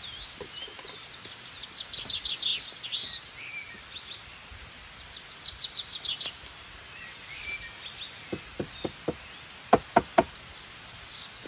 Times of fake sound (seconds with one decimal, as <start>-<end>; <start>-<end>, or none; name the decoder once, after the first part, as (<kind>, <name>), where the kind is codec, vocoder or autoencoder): none